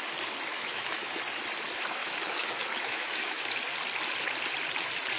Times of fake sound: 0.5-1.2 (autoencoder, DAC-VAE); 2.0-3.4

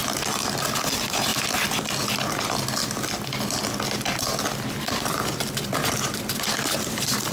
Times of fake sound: 0.6-1.3 (vocoder, BigVGAN v2); 4.8-7.3

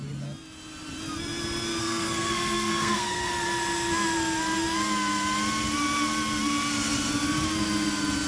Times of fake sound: 1.8-3.3 (codec, SNAC)

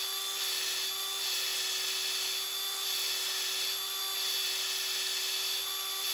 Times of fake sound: none

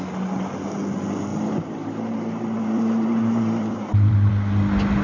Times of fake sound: 1.3-4.3 (vocoder, BigVGAN v2)

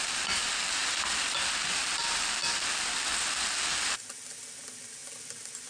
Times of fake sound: none

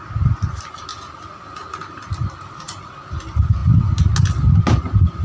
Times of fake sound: none